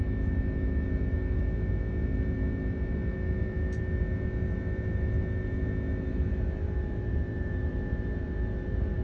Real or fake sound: real